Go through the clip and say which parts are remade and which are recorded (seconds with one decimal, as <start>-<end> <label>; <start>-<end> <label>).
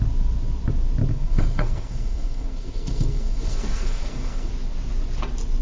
0.0-1.1 recorded; 1.1-4.5 remade; 4.5-5.6 recorded